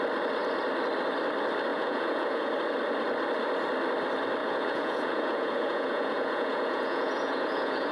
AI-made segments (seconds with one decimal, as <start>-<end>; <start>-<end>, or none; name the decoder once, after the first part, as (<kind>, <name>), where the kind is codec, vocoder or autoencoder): 1.7-2.5 (vocoder, Vocos); 4.4-7.9